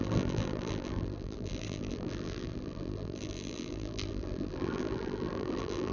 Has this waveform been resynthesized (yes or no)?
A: yes